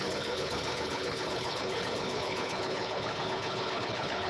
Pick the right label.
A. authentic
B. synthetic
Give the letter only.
B